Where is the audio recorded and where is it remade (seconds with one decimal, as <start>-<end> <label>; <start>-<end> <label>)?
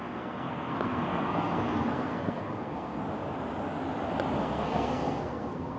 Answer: 0.0-3.0 remade; 3.0-4.4 recorded; 4.4-5.8 remade